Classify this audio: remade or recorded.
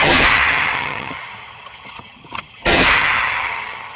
remade